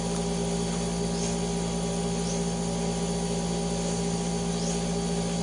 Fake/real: real